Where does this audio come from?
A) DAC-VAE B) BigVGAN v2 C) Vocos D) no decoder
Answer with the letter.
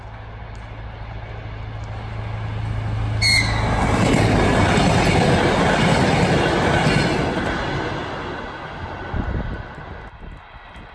D